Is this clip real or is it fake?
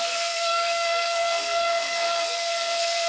fake